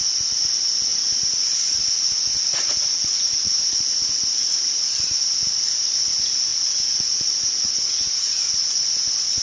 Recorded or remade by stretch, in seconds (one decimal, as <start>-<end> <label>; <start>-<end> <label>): 0.0-2.3 recorded; 2.3-3.5 remade; 3.5-6.5 recorded; 6.5-8.8 remade; 8.8-9.4 recorded